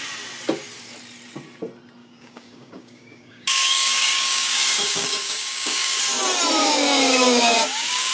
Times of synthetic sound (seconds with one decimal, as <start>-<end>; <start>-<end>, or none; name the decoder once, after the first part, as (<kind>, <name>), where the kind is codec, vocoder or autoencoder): 2.0-6.0 (codec, DAC); 6.6-8.1